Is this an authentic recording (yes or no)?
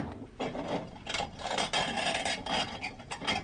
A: yes